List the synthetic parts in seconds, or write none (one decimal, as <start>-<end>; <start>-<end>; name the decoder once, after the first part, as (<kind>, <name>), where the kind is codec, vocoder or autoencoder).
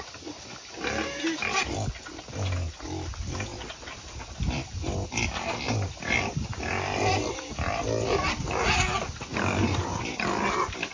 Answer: none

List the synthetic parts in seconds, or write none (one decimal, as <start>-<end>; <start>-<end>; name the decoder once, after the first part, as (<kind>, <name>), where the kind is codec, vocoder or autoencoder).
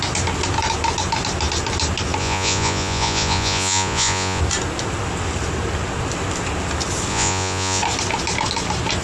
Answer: 2.2-4.4 (vocoder, Vocos); 7.1-7.8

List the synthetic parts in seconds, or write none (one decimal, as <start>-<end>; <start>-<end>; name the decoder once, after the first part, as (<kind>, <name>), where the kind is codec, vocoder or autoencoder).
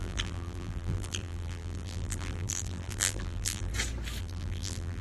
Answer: 0.0-3.7 (vocoder, BigVGAN v2); 4.2-5.0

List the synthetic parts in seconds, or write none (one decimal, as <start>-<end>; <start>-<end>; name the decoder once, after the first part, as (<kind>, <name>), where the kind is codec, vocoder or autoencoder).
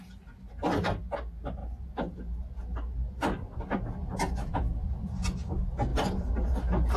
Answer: 1.6-2.2 (vocoder, BigVGAN v2)